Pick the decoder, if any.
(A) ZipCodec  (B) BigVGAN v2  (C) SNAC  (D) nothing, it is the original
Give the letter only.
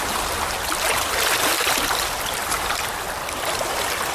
D